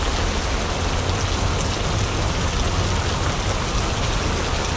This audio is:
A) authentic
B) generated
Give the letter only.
A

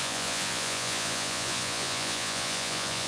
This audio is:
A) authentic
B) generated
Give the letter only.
B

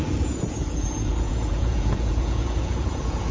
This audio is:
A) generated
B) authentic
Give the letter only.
A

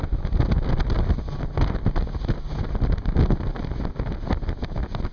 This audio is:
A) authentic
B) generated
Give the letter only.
A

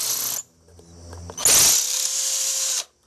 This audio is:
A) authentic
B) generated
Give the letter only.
A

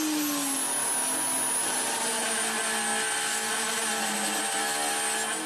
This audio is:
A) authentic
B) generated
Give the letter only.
A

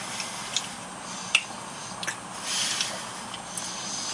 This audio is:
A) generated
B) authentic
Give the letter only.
B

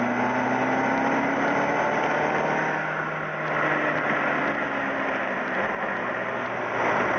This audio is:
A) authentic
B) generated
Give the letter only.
A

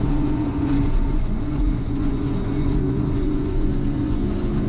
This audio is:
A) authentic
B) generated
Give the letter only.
B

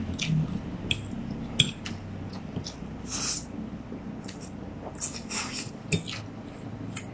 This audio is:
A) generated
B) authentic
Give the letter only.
B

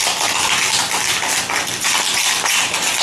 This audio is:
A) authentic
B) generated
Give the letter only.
A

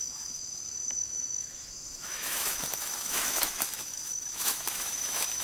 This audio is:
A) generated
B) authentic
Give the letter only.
A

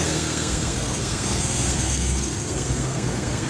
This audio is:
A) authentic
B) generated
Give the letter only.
B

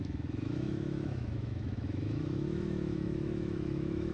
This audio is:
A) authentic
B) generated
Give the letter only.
B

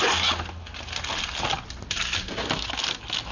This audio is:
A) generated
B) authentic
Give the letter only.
B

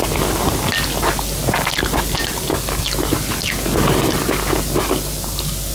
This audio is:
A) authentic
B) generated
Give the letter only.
A